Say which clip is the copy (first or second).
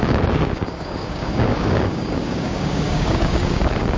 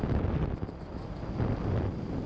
first